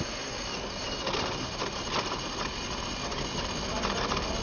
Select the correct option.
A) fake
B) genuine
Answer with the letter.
B